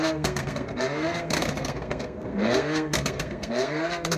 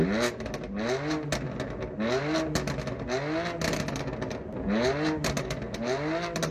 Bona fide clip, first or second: second